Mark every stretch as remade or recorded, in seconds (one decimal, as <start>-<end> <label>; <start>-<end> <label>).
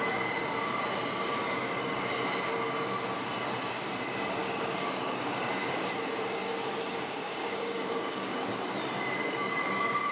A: 0.0-1.4 recorded; 1.4-2.0 remade; 2.0-4.4 recorded; 4.4-8.5 remade; 8.5-9.2 recorded; 9.2-10.1 remade